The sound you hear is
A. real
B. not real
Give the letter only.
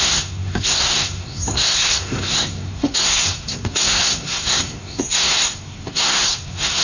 B